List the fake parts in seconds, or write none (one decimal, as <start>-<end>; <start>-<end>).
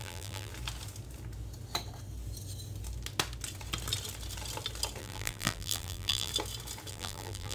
0.0-0.5; 5.0-6.3; 6.9-7.5